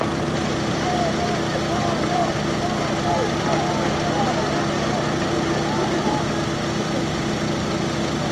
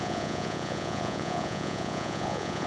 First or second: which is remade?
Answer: second